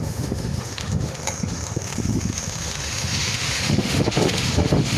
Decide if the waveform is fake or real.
fake